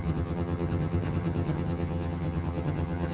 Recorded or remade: remade